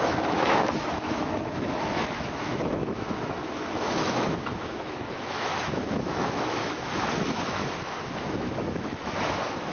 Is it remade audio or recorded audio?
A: remade